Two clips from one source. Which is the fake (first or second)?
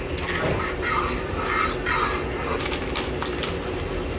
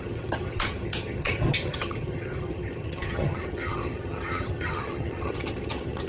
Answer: second